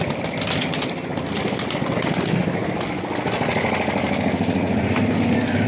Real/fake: real